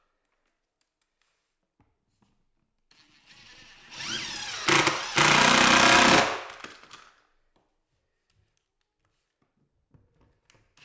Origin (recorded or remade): recorded